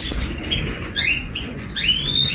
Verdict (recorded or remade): remade